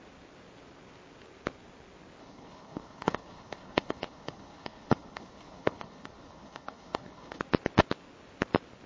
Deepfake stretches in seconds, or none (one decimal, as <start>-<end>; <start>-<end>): 2.2-7.4